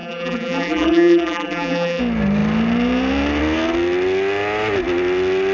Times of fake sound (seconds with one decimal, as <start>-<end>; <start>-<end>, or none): 0.0-2.0